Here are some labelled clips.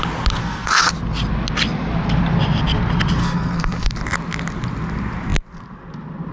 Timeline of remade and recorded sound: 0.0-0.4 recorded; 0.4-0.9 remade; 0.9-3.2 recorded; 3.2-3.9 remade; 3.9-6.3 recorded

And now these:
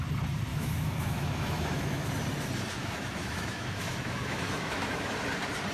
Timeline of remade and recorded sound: 0.0-0.5 recorded; 0.5-2.1 remade; 2.1-2.8 recorded; 2.8-5.1 remade; 5.1-5.7 recorded

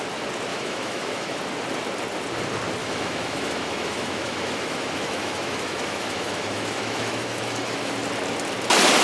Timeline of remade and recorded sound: 0.0-0.5 recorded; 0.5-1.4 remade; 1.4-2.8 recorded; 2.8-7.9 remade; 7.9-9.0 recorded

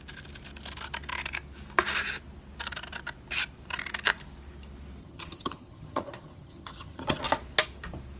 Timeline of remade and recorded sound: 0.0-5.0 recorded; 5.0-7.2 remade; 7.2-8.2 recorded

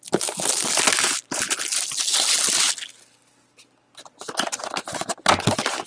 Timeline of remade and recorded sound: 0.0-5.9 recorded

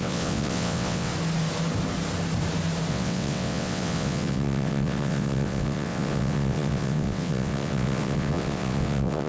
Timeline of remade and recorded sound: 0.0-1.1 remade; 1.1-2.9 recorded; 2.9-9.3 remade

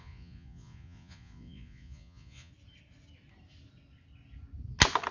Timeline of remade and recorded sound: 0.0-2.5 remade; 2.5-5.1 recorded